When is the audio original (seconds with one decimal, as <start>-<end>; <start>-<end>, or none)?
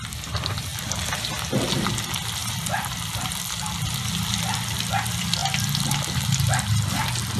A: 0.0-2.4; 4.3-7.4